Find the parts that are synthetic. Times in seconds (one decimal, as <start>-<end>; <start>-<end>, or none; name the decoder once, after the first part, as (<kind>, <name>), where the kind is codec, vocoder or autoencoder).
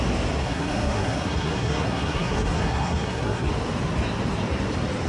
0.4-3.5 (codec, SNAC)